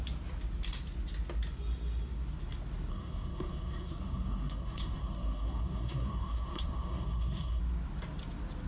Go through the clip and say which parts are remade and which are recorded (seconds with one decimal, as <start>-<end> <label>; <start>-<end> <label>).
0.0-2.9 recorded; 2.9-7.6 remade; 7.6-8.7 recorded